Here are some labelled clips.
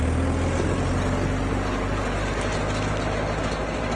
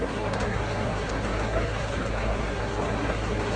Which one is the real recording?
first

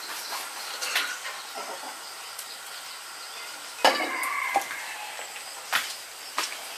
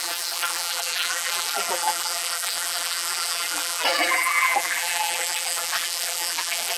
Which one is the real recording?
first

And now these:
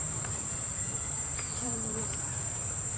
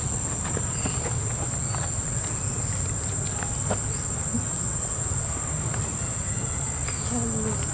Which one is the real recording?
second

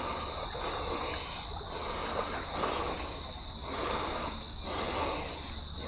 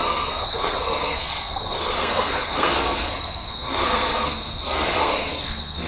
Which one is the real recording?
first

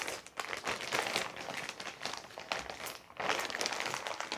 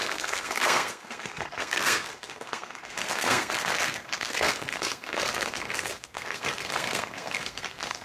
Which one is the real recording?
first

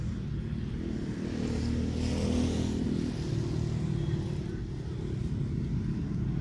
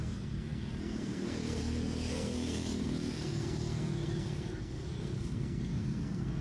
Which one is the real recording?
first